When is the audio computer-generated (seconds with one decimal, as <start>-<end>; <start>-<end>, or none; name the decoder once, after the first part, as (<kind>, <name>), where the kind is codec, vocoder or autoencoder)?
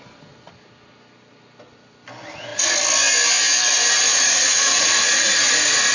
4.1-5.9 (vocoder, Vocos)